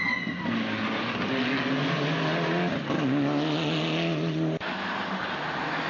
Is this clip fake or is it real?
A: real